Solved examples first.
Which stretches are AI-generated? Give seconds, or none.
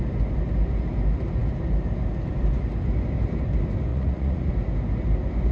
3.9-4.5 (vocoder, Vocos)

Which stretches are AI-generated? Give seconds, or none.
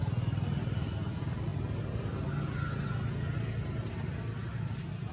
none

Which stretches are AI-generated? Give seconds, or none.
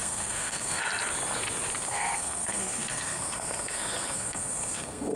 0.0-0.8 (codec, SNAC); 1.8-5.2